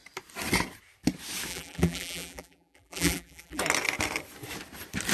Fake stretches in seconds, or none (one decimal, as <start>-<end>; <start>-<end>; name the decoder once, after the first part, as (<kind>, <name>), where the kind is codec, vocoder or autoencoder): 1.5-3.6 (vocoder, BigVGAN v2)